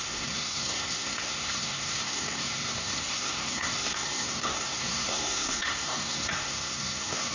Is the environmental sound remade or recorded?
remade